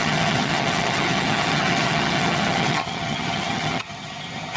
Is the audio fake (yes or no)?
yes